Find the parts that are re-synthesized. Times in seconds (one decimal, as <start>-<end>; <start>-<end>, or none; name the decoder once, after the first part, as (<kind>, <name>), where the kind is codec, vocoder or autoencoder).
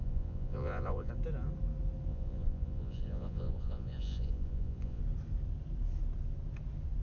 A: 0.0-1.1 (vocoder, Vocos); 2.1-5.0